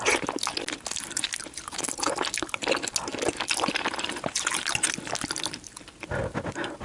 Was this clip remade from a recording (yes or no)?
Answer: no